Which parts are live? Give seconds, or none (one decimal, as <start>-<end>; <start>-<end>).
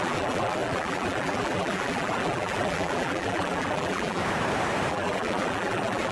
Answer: 4.2-4.9